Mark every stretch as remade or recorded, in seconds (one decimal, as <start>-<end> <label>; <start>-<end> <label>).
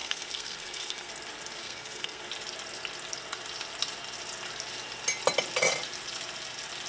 0.0-1.1 remade; 1.1-1.6 recorded; 1.6-2.2 remade; 2.2-6.9 recorded